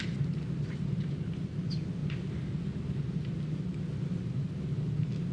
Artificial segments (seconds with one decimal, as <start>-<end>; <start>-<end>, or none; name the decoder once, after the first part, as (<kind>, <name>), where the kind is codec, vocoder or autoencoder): none